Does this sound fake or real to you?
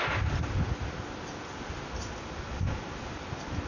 real